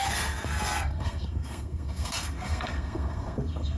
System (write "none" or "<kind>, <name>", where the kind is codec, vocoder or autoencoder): codec, SNAC